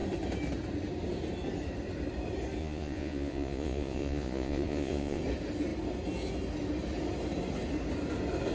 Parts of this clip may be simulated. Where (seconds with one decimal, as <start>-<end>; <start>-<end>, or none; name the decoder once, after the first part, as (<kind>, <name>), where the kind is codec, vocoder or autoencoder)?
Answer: 2.6-5.2 (vocoder, Vocos)